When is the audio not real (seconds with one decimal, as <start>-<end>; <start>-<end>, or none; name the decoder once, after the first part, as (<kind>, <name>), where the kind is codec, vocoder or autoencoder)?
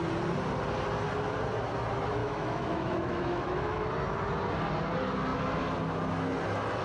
2.2-3.9 (autoencoder, DAC-VAE)